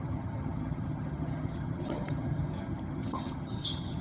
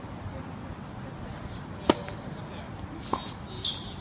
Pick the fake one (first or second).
first